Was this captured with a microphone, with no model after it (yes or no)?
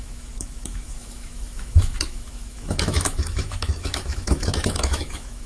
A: no